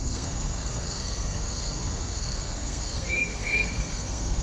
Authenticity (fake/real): fake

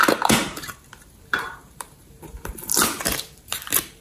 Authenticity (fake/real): fake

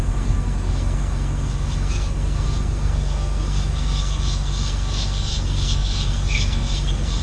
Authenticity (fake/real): fake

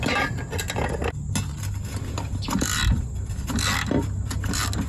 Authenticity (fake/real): real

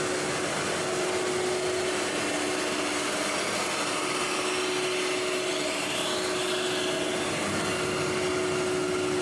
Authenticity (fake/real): real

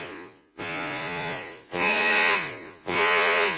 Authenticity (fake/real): fake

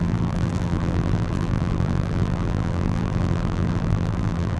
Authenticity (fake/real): fake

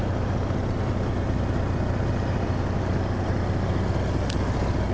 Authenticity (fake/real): real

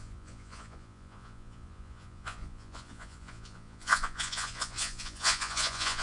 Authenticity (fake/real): fake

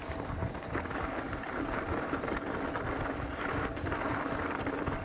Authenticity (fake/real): real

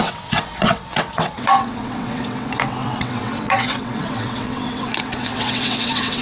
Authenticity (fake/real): fake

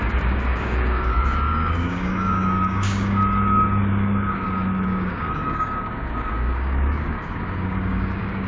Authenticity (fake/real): fake